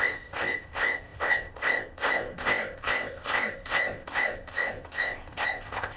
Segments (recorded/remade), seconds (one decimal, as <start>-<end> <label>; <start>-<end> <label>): 0.0-6.0 remade